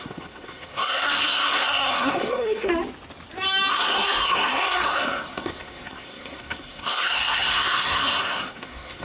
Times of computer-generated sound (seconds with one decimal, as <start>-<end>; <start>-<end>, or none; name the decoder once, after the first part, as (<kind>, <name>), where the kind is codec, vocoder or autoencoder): 0.0-2.7 (codec, SNAC); 3.7-9.0